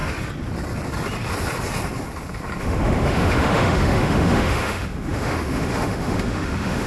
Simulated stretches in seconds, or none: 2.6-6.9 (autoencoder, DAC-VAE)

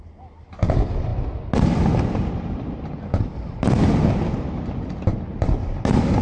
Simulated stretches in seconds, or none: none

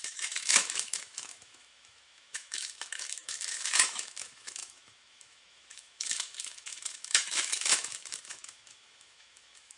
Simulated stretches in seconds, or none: 0.0-9.8 (autoencoder, DAC-VAE)

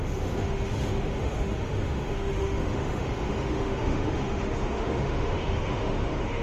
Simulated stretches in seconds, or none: 0.0-6.4 (autoencoder, DAC-VAE)

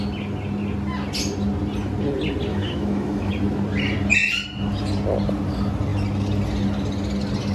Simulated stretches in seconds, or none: 2.5-3.3 (autoencoder, DAC-VAE)

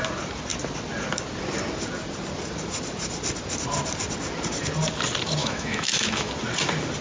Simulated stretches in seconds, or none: 5.4-6.3 (autoencoder, DAC-VAE)

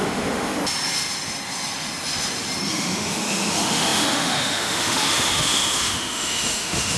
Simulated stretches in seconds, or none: 0.0-0.6 (autoencoder, DAC-VAE); 2.7-7.0